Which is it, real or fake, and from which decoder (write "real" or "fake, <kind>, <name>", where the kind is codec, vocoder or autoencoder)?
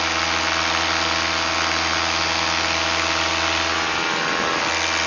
real